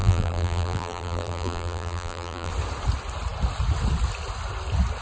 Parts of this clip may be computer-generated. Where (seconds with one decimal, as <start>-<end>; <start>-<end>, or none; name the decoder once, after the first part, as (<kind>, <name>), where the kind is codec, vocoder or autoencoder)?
0.0-2.5 (vocoder, BigVGAN v2)